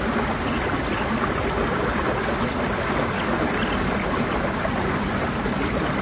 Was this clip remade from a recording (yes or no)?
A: no